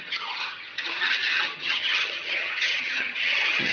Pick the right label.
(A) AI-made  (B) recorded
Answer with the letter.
A